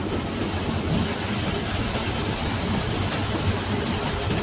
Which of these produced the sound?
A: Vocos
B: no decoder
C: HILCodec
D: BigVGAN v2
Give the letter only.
B